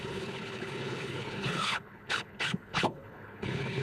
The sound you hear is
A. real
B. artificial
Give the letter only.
B